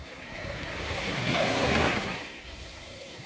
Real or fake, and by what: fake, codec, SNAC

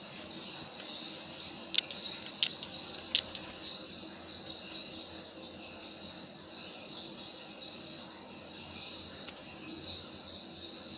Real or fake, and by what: real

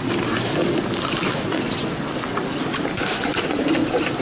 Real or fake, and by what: real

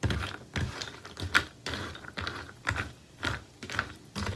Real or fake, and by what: real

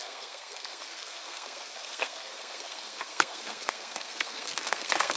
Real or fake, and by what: fake, codec, SNAC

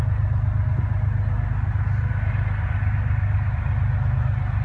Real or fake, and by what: real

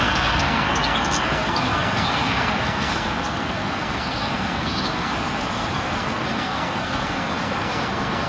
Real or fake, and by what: fake, codec, SNAC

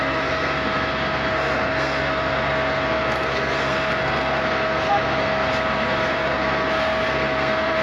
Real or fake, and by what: fake, codec, SNAC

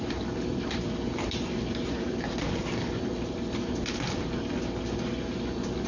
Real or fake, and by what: real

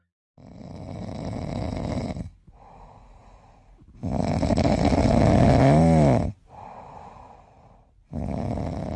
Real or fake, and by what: real